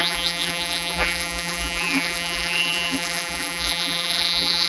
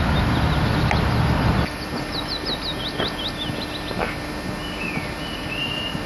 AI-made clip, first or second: first